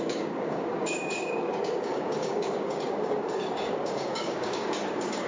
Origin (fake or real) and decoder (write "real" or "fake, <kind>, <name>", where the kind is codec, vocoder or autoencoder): fake, codec, DAC